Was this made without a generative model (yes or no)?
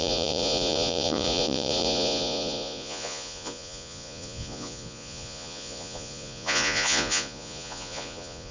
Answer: no